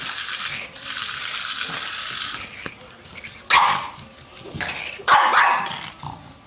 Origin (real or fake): real